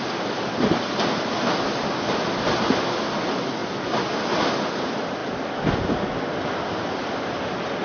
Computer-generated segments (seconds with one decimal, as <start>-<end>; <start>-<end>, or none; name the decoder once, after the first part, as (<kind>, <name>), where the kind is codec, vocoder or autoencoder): none